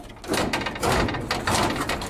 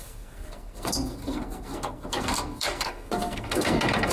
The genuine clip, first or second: first